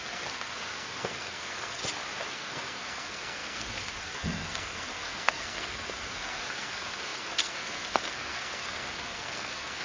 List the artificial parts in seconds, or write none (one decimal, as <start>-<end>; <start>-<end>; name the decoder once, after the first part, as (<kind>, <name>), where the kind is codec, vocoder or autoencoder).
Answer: 0.0-1.8 (codec, SNAC); 2.3-9.8